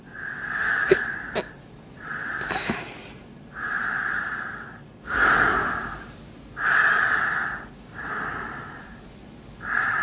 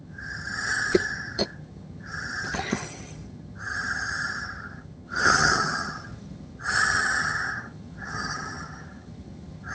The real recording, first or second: first